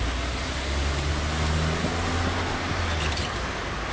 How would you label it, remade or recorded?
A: recorded